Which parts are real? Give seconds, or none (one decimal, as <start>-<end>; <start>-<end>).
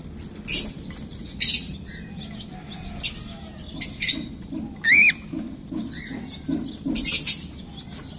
0.0-1.1; 1.7-8.2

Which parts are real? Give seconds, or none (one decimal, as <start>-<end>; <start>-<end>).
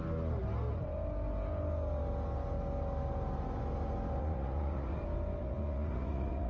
0.0-4.2; 4.9-5.4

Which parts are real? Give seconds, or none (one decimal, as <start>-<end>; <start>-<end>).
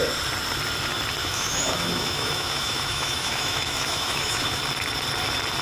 0.0-1.2; 4.6-5.6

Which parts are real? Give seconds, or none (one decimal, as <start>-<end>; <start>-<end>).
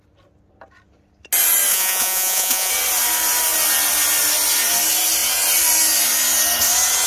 0.0-1.7; 2.7-7.1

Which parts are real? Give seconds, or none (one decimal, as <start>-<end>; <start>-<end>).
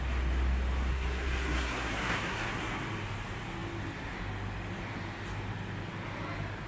0.0-0.9; 2.8-6.7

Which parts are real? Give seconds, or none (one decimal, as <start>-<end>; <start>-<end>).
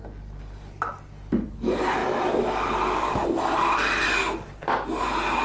0.0-5.4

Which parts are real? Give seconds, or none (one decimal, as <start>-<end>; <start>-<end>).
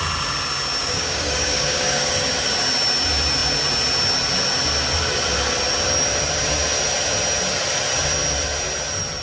0.0-0.8; 2.1-9.2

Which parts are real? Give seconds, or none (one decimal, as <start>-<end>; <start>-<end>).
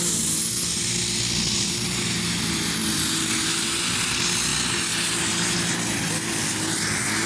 0.0-7.3